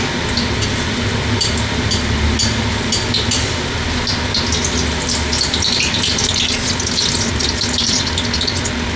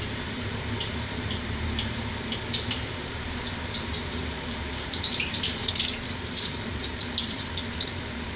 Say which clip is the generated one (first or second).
second